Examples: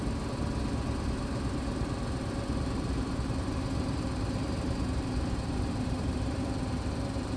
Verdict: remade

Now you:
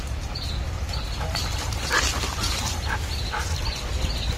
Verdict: recorded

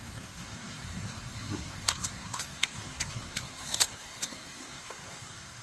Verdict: remade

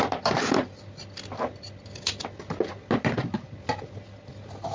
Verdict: recorded